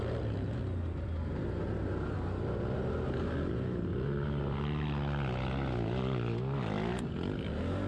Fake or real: real